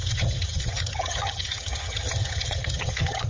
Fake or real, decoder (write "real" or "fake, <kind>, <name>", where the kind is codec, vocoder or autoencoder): fake, vocoder, HiFi-GAN